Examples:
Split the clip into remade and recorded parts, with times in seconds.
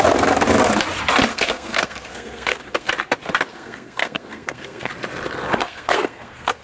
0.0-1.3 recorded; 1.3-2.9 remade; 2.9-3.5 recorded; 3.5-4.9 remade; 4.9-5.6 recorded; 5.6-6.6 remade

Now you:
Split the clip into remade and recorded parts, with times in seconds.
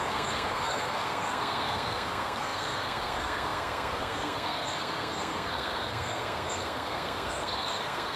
0.0-8.2 remade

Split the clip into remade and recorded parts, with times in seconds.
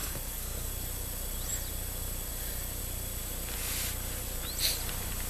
0.0-0.7 remade; 0.7-5.3 recorded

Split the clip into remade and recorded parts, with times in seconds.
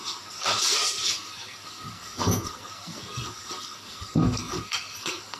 0.0-5.4 remade